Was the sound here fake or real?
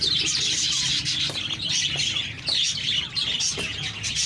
real